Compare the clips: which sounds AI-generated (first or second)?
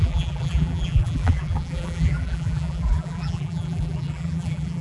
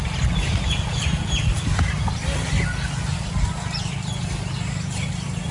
first